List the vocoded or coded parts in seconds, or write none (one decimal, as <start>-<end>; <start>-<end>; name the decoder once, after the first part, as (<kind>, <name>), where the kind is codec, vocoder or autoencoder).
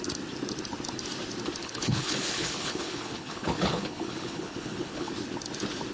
1.6-5.1 (codec, HILCodec)